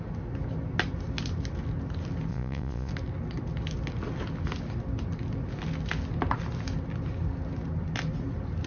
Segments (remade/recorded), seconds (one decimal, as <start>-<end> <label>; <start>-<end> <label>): 0.0-2.3 recorded; 2.3-2.9 remade; 2.9-8.7 recorded